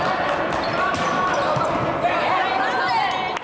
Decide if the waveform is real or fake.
real